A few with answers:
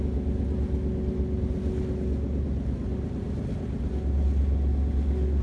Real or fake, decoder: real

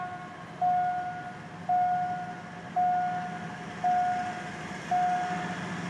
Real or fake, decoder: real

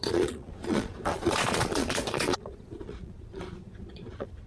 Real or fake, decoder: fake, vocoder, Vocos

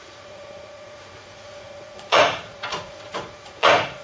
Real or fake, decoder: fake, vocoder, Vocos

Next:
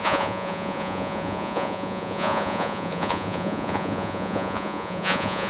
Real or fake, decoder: fake, vocoder, Vocos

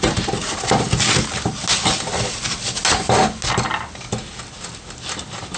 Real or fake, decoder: real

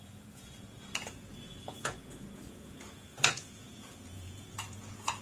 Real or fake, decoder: fake, vocoder, Vocos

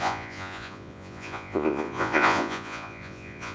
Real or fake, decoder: fake, vocoder, Vocos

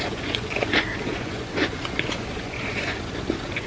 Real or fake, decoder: fake, vocoder, Vocos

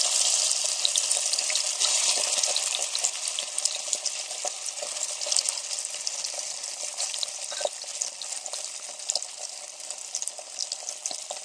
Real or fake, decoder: real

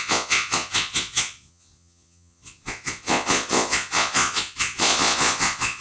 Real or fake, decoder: fake, vocoder, Vocos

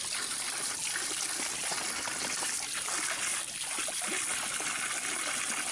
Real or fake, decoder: real